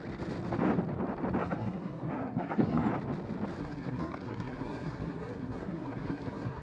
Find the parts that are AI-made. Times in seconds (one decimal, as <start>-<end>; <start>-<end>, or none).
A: 1.4-2.9; 3.6-6.6